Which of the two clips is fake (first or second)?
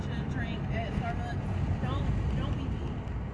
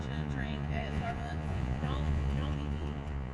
second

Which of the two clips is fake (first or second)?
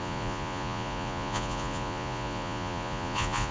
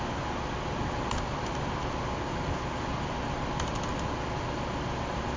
first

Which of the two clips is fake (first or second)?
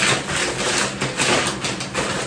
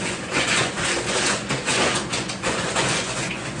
second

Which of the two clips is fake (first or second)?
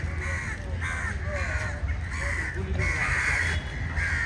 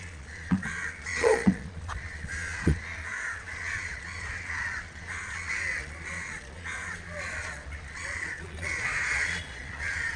second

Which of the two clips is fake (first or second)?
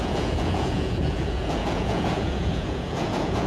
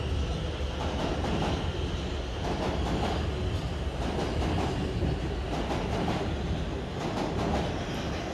first